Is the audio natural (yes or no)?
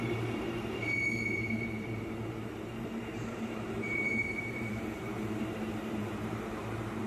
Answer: no